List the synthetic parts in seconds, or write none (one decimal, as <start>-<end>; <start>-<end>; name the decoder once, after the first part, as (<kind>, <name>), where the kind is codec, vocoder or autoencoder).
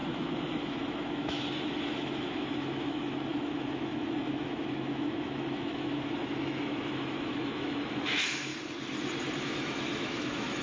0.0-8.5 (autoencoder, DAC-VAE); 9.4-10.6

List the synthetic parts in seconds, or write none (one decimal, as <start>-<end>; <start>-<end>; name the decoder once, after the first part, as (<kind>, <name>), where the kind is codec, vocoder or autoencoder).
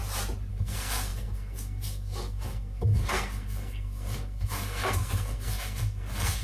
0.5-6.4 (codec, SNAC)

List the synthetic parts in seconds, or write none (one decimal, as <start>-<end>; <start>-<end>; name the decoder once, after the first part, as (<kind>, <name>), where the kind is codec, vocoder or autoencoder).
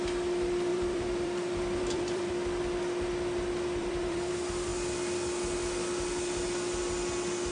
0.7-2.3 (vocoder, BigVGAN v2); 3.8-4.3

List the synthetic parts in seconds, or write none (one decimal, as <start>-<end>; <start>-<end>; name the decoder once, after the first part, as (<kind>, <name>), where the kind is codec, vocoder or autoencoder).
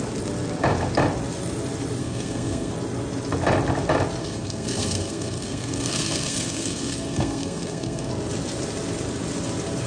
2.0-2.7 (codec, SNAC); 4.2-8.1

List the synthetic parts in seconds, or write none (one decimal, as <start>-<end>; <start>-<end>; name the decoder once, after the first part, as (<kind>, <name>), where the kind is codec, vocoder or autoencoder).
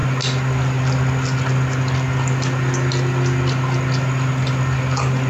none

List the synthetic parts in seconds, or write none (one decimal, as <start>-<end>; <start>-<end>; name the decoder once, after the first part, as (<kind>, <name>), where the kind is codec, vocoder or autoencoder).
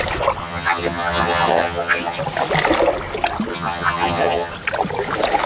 0.4-2.2 (vocoder, HiFi-GAN); 3.5-4.5